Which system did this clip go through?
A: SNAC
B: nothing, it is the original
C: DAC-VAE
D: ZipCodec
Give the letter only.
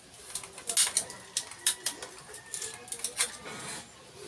B